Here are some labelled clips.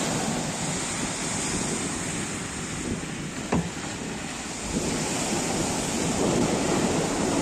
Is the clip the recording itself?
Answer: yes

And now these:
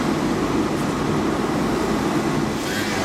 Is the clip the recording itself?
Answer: yes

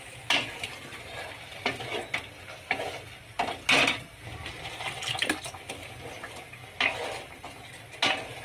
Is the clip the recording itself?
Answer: yes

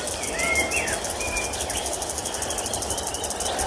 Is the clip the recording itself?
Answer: yes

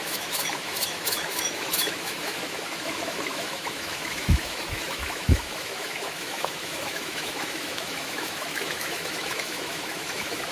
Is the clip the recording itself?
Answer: no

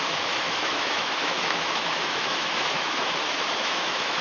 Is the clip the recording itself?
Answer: no